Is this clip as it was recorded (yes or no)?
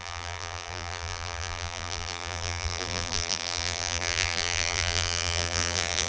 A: no